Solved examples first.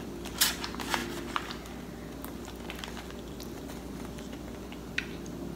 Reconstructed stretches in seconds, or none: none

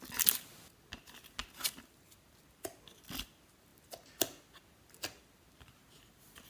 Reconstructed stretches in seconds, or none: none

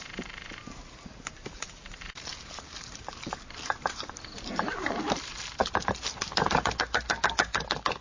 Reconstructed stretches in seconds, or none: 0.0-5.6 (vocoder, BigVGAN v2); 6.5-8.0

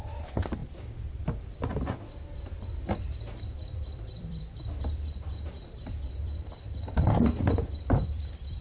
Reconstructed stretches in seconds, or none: 0.0-0.6 (vocoder, BigVGAN v2); 3.4-8.6

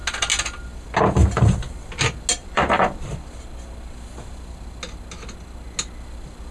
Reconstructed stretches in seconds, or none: 1.2-2.0 (vocoder, BigVGAN v2); 2.4-3.2

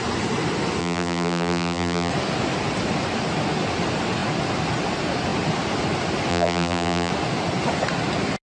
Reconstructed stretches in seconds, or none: 0.8-2.1 (vocoder, BigVGAN v2); 6.3-7.1